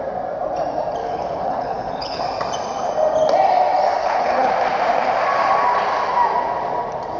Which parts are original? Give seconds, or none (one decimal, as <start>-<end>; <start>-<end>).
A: 0.0-1.0; 2.2-4.0; 4.5-7.2